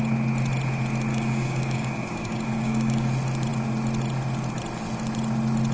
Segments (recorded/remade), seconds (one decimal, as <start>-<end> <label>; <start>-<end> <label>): 0.0-1.1 recorded; 1.1-3.1 remade; 3.1-5.7 recorded